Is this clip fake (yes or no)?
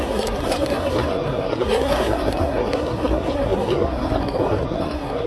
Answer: yes